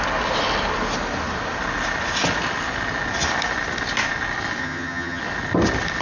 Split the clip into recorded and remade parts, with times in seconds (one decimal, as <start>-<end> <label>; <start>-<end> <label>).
0.0-4.6 recorded; 4.6-5.2 remade; 5.2-6.0 recorded